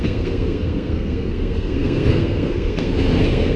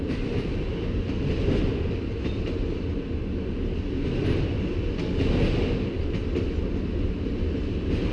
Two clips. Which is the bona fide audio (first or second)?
second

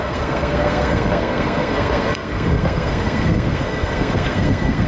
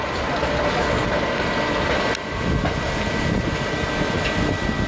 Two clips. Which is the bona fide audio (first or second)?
second